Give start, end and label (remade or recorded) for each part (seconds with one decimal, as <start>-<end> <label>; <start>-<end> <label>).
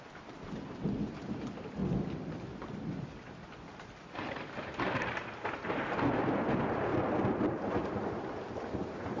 0.0-1.8 remade; 1.8-2.6 recorded; 2.6-6.9 remade; 6.9-7.5 recorded; 7.5-9.2 remade